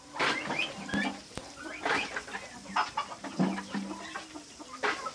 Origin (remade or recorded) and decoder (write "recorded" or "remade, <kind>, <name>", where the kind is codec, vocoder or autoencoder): recorded